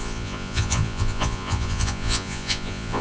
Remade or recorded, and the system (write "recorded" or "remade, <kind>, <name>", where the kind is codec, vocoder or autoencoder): remade, vocoder, Vocos